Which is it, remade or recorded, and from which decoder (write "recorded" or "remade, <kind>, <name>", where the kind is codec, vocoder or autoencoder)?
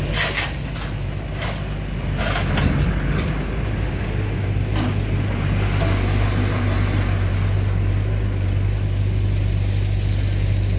recorded